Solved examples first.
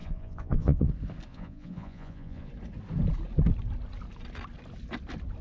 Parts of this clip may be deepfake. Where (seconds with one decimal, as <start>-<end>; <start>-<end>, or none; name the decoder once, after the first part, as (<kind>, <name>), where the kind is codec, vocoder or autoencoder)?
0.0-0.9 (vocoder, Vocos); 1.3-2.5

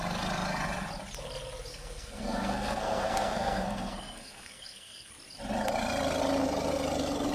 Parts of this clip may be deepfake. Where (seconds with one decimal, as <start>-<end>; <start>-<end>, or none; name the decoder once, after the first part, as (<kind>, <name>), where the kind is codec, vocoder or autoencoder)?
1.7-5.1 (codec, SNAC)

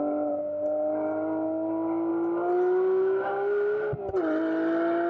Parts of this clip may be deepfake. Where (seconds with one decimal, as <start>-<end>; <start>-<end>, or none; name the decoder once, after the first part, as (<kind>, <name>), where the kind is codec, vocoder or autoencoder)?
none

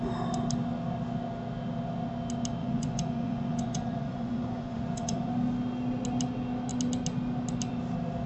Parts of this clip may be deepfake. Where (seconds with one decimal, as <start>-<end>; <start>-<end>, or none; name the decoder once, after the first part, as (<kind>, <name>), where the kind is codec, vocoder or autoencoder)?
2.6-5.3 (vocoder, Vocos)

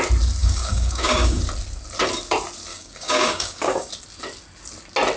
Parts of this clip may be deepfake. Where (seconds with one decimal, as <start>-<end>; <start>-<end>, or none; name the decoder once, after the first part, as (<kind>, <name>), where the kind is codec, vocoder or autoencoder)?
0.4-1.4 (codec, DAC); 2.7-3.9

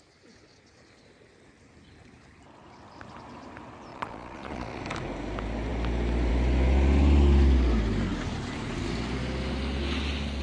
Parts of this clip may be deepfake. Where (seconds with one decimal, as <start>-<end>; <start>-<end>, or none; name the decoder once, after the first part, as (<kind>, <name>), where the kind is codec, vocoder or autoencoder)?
3.9-4.8 (vocoder, Vocos)

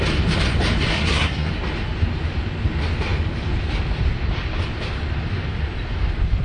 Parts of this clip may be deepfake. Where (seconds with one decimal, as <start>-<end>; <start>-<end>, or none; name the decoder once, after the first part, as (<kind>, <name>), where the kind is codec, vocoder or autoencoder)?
0.9-1.5 (codec, SNAC)

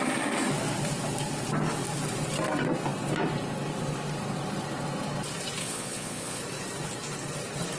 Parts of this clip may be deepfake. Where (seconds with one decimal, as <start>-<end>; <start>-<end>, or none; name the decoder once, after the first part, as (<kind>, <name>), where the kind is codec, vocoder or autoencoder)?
5.6-6.4 (vocoder, Vocos)